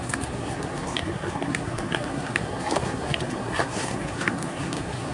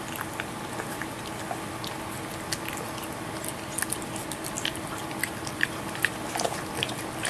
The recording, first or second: second